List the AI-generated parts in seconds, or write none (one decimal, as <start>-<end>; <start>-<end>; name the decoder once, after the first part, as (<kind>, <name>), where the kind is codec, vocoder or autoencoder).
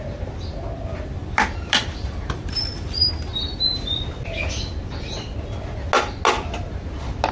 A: 1.2-4.0 (vocoder, BigVGAN v2)